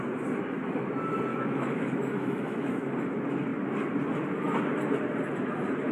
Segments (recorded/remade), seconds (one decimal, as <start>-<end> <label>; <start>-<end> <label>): 0.0-1.3 recorded; 1.3-2.9 remade; 2.9-5.9 recorded